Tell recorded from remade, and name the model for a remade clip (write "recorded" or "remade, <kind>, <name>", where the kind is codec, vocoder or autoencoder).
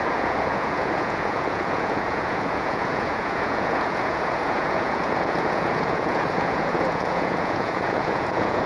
remade, vocoder, Vocos